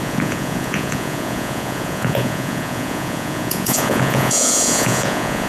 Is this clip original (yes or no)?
no